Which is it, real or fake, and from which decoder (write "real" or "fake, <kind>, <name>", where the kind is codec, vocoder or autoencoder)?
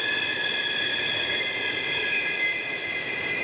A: fake, vocoder, BigVGAN v2